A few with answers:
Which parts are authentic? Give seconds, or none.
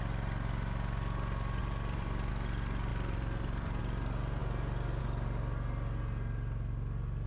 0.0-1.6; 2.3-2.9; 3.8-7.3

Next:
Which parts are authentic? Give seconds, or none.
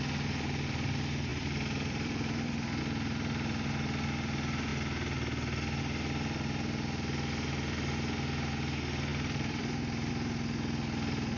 0.0-1.3; 2.8-9.1; 10.1-11.4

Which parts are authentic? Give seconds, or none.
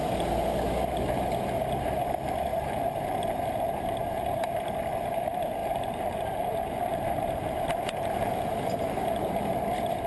0.0-2.5; 4.6-5.6; 9.6-10.1